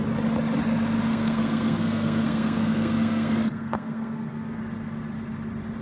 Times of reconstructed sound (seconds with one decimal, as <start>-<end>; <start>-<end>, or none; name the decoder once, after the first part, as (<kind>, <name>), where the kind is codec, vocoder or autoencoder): 1.1-4.6 (codec, SNAC)